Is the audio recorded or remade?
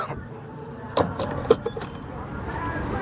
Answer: remade